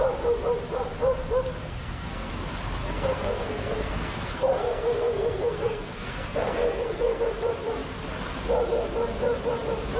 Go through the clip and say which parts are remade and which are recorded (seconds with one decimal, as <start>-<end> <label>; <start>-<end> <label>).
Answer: 0.0-1.6 recorded; 1.6-2.3 remade; 2.3-2.8 recorded; 2.8-7.2 remade; 7.2-10.0 recorded